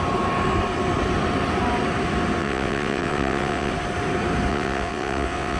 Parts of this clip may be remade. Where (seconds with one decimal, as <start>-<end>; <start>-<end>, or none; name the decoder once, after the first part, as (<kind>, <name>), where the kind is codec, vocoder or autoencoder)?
2.4-3.7 (vocoder, WaveNeXt); 4.5-5.6